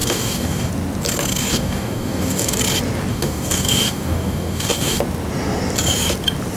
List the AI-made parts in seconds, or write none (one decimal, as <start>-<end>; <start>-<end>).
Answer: 0.0-0.7; 1.5-2.6; 3.1-5.0